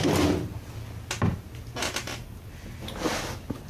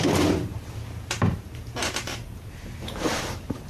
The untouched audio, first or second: first